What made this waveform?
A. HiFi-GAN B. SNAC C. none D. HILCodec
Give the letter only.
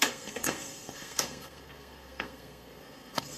B